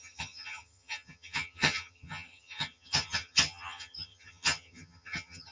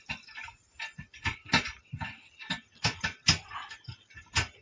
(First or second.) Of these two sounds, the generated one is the first